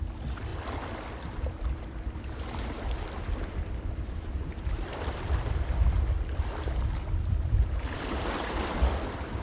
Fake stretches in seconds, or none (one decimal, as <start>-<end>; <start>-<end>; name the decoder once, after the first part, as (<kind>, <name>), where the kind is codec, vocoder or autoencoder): none